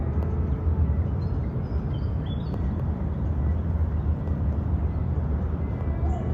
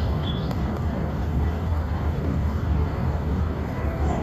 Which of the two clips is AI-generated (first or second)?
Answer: second